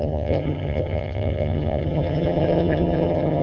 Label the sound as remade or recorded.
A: remade